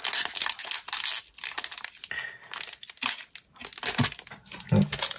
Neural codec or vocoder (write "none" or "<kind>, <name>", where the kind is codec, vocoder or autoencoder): none